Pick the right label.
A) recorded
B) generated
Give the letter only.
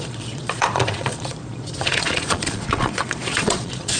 B